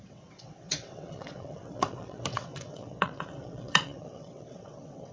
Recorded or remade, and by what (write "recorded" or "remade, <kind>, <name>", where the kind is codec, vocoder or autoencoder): remade, vocoder, WaveNeXt